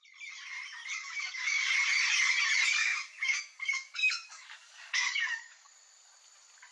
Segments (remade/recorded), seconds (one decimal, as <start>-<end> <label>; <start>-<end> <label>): 0.0-1.0 recorded; 1.0-1.7 remade; 1.7-2.8 recorded; 2.8-5.7 remade; 5.7-6.7 recorded